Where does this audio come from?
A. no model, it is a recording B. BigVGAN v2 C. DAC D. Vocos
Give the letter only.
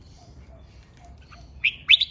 B